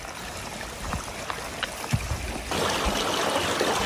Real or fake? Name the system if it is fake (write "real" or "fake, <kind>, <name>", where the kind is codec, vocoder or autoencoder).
real